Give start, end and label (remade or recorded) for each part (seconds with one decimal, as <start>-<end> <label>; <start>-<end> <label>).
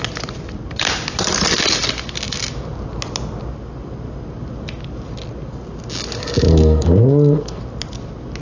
0.0-6.5 recorded; 6.5-7.6 remade; 7.6-8.4 recorded